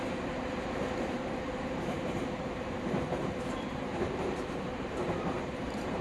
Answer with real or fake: fake